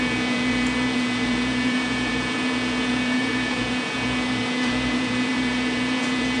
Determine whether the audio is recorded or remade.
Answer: remade